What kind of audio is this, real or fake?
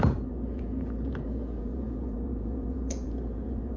fake